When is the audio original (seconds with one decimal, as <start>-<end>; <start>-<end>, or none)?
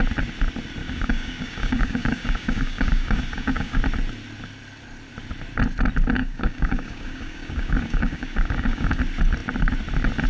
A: 0.0-0.8; 3.8-6.2; 9.0-10.3